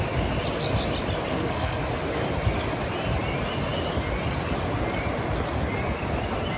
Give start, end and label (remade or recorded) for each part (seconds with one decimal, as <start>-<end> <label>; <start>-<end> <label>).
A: 0.0-1.3 recorded; 1.3-1.8 remade; 1.8-6.6 recorded

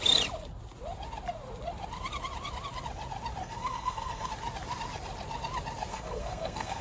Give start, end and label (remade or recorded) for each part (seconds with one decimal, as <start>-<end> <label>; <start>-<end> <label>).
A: 0.0-3.4 recorded; 3.4-4.3 remade; 4.3-5.9 recorded; 5.9-6.8 remade